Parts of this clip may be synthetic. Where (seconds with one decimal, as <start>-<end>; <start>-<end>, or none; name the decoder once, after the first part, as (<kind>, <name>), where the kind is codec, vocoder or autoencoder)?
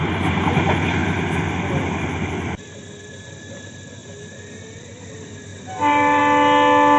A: 1.0-2.8 (vocoder, BigVGAN v2); 5.5-6.2